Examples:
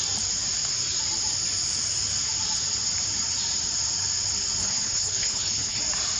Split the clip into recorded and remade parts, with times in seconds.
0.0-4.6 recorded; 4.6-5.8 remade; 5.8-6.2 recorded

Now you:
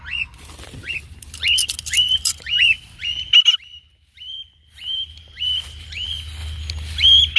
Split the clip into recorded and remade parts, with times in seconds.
0.0-7.4 recorded

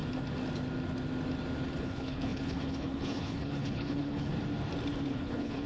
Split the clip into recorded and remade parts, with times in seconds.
0.0-1.8 recorded; 1.8-4.3 remade; 4.3-5.1 recorded; 5.1-5.7 remade

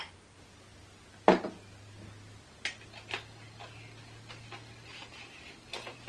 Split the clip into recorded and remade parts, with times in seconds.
0.0-6.1 recorded